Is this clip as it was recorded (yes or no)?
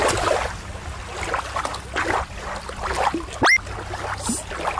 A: yes